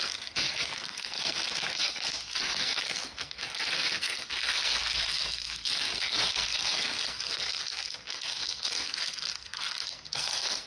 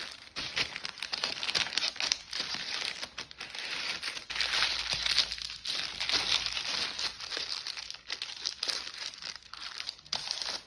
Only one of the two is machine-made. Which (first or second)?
first